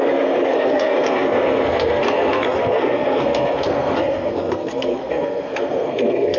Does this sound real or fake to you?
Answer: fake